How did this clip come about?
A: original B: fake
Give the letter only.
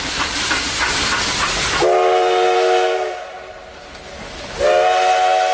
A